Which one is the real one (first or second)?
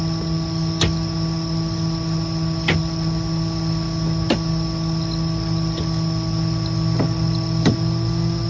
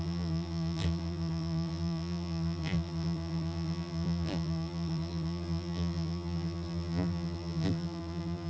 first